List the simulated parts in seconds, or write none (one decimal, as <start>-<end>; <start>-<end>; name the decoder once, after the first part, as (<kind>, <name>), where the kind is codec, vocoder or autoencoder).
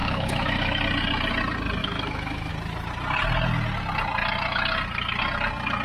0.0-0.8 (autoencoder, DAC-VAE); 1.8-2.5